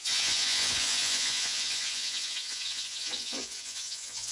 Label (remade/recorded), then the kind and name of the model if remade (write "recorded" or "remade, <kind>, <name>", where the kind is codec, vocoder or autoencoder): remade, vocoder, Vocos